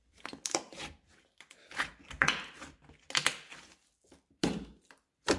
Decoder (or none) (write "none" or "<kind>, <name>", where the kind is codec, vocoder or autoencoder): none